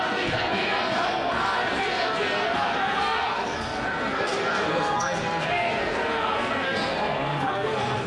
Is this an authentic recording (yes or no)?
no